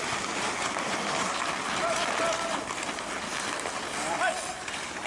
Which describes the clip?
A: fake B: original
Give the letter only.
B